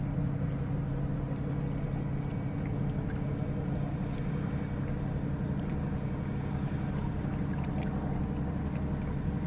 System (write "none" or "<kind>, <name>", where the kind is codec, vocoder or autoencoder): none